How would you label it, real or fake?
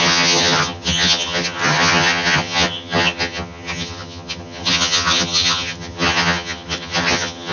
fake